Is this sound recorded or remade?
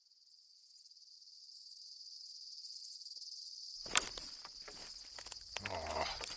recorded